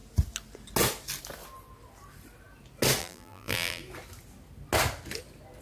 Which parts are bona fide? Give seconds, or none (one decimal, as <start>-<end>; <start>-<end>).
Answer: 0.0-3.0; 3.8-5.6